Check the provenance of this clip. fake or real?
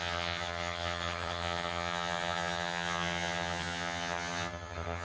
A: fake